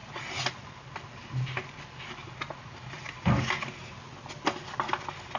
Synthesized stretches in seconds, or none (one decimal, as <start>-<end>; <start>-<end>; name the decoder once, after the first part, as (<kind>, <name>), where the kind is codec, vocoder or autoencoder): none